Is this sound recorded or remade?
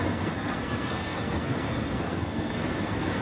remade